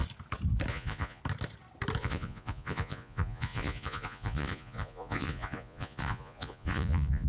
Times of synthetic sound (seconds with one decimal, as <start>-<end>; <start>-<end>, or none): 0.7-1.2; 2.0-7.3